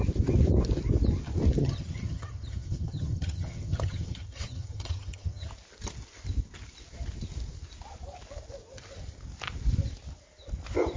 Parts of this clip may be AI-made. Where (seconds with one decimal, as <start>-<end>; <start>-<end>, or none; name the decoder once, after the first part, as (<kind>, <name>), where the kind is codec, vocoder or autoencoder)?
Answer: 1.6-5.5 (vocoder, HiFi-GAN)